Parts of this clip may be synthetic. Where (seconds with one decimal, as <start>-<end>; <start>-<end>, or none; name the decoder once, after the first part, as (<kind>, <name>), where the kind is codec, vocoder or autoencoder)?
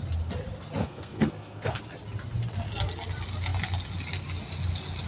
0.8-1.8 (codec, SNAC)